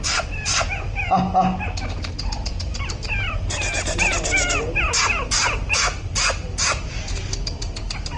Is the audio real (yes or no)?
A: yes